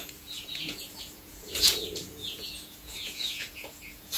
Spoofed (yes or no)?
yes